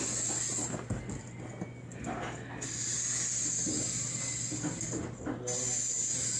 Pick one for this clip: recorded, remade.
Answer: recorded